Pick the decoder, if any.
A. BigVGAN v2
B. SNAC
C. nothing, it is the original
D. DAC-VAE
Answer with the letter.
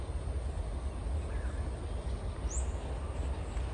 C